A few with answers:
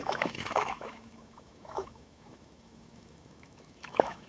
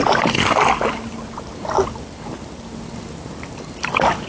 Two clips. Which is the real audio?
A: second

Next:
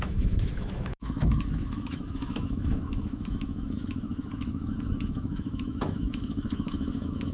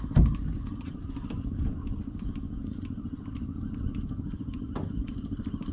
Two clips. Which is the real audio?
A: second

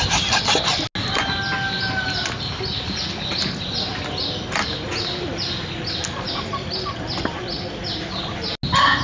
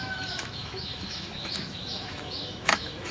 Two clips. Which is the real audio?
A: first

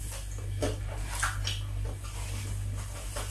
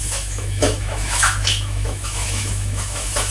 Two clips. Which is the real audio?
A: first